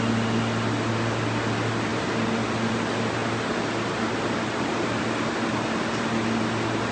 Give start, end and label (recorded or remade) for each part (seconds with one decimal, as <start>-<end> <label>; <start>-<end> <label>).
0.0-6.9 recorded